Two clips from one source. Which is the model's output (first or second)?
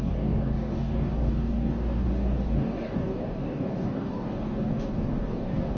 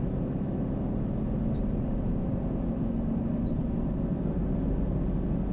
first